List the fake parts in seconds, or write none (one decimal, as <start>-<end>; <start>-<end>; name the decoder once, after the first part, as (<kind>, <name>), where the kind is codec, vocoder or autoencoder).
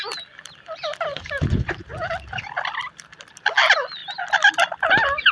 none